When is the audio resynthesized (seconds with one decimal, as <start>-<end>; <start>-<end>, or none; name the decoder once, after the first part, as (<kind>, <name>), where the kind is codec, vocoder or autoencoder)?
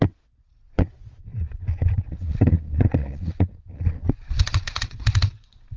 0.0-5.8 (vocoder, Vocos)